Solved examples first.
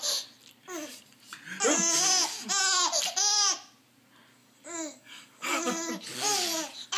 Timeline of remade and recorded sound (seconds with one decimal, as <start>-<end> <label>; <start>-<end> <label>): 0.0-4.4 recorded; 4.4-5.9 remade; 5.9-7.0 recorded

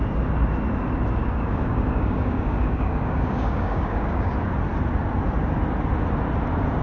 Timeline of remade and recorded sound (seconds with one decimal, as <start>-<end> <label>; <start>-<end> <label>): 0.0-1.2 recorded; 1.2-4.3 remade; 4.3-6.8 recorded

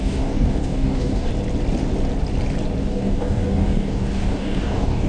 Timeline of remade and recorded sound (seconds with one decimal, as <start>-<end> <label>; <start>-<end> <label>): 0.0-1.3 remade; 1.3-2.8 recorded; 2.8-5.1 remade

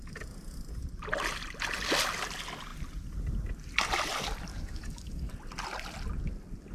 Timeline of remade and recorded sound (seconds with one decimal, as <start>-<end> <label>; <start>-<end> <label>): 0.0-4.5 recorded; 4.5-5.3 remade; 5.3-6.7 recorded